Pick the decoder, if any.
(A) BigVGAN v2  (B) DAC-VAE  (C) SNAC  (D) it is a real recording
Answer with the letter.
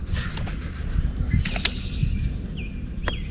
D